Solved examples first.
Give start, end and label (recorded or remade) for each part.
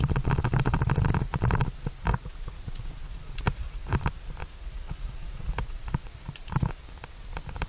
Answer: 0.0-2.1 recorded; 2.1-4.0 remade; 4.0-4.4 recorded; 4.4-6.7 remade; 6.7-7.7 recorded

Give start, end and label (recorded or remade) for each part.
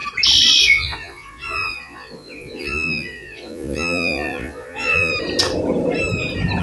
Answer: 0.0-0.6 recorded; 0.6-5.1 remade; 5.1-6.6 recorded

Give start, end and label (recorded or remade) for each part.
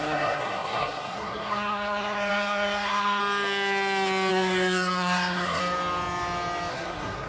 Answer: 0.0-3.2 remade; 3.2-4.3 recorded; 4.3-5.6 remade; 5.6-6.7 recorded; 6.7-7.3 remade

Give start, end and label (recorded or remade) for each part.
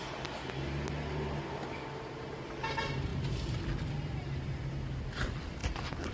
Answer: 0.0-3.1 recorded; 3.1-5.0 remade; 5.0-6.1 recorded